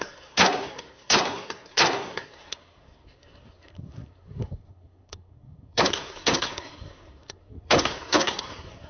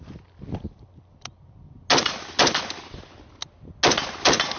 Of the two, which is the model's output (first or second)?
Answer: first